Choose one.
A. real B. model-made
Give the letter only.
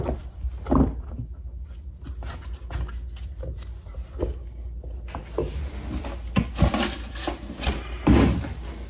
A